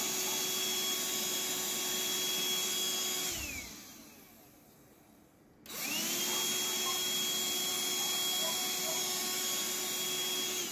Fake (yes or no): no